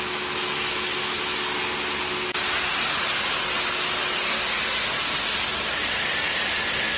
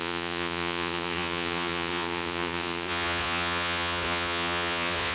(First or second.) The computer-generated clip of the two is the second